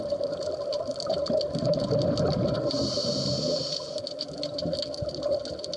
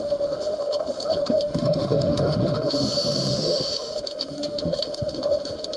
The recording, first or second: first